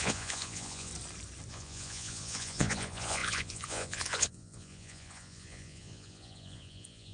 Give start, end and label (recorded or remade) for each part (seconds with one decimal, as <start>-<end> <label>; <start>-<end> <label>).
0.0-0.9 remade; 0.9-1.5 recorded; 1.5-7.1 remade